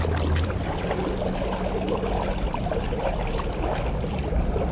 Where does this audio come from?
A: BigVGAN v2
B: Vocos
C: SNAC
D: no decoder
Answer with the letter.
D